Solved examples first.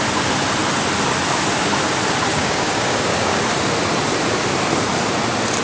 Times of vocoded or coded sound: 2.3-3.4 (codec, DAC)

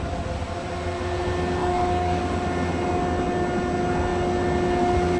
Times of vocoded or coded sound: 1.6-2.2 (codec, DAC)

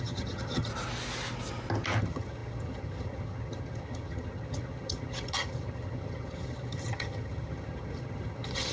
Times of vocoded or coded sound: 0.0-0.7 (vocoder, HiFi-GAN); 2.0-8.7

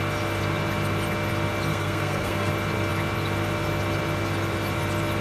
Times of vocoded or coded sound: 1.7-2.5 (codec, SNAC)

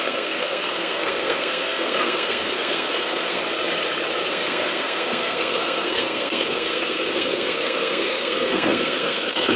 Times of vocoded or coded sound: 0.0-3.4 (codec, SNAC); 4.3-9.6